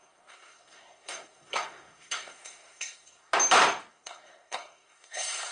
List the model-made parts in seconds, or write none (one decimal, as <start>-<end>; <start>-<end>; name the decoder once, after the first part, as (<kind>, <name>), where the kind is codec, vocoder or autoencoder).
0.0-3.3 (codec, SNAC); 3.9-5.5